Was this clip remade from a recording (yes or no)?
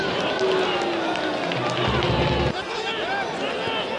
no